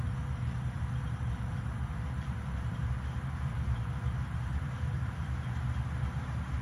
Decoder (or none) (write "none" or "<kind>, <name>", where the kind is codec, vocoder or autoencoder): vocoder, BigVGAN v2